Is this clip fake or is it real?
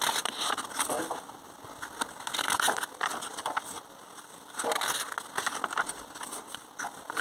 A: real